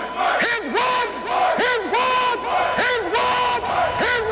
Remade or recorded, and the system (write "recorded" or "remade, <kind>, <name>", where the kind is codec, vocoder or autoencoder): recorded